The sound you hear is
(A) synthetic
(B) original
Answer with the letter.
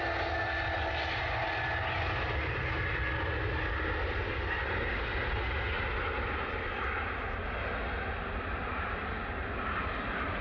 B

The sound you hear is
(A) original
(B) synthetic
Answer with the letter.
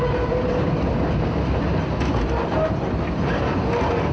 A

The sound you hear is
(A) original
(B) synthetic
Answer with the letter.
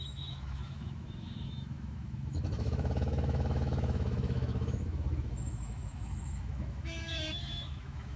B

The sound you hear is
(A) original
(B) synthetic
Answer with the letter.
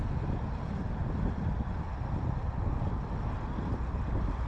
A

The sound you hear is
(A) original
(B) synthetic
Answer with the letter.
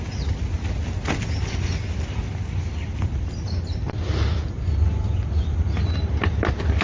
A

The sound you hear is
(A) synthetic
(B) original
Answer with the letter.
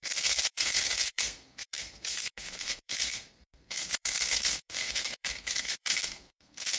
A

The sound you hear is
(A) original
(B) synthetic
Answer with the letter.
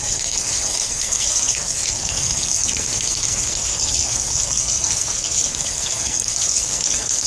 B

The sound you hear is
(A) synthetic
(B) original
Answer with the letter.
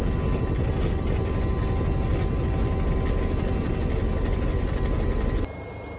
B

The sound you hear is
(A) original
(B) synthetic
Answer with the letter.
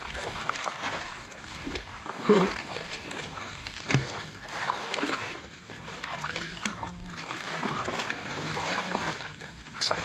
B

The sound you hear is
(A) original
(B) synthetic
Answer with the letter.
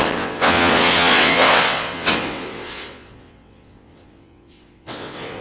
B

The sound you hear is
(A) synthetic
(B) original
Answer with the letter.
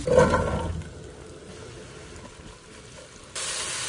B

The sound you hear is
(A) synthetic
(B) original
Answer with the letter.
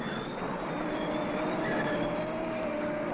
B